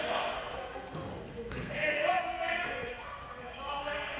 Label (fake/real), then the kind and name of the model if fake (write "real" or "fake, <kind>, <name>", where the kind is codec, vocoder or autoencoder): fake, codec, SNAC